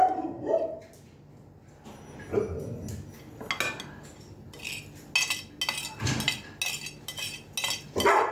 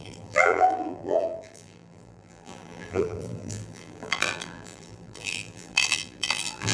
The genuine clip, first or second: first